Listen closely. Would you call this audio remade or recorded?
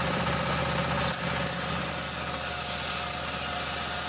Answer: recorded